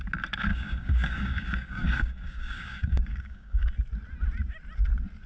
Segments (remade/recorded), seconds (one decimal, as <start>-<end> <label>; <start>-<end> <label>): 0.0-0.5 recorded; 0.5-3.7 remade; 3.7-5.3 recorded